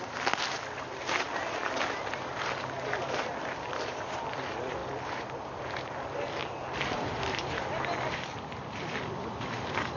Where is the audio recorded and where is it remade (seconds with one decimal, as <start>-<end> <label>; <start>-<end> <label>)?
0.0-4.8 remade; 4.8-5.7 recorded; 5.7-10.0 remade

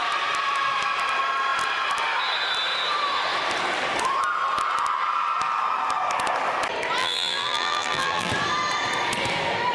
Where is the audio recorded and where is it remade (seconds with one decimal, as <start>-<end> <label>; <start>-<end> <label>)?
0.0-7.0 recorded; 7.0-8.3 remade; 8.3-9.7 recorded

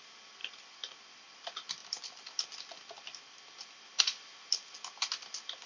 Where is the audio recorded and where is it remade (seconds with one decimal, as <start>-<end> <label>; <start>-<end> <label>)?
0.0-5.7 recorded

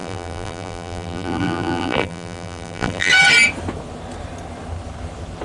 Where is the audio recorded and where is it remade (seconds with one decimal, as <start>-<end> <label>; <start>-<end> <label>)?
0.0-3.1 remade; 3.1-5.4 recorded

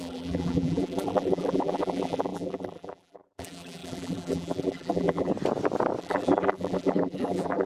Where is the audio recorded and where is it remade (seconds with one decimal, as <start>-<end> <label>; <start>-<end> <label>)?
0.0-5.3 remade; 5.3-6.0 recorded; 6.0-7.7 remade

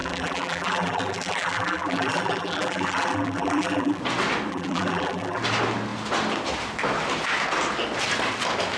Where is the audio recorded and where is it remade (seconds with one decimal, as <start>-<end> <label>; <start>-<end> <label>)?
0.0-4.0 remade; 4.0-4.5 recorded; 4.5-5.4 remade; 5.4-8.8 recorded

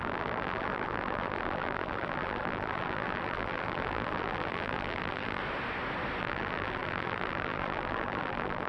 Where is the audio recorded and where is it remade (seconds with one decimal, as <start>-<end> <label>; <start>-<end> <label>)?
0.0-5.4 remade; 5.4-6.2 recorded; 6.2-8.7 remade

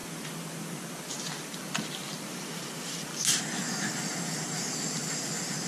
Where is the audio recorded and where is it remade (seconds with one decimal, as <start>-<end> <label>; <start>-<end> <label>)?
0.0-5.7 recorded